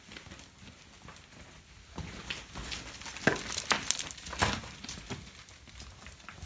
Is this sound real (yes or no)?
yes